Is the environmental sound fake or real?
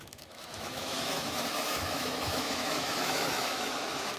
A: fake